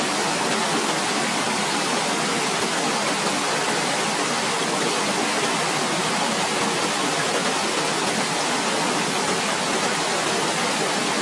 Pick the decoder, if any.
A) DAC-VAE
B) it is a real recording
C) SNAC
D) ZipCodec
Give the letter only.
B